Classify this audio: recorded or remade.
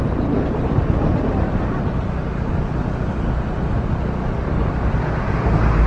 recorded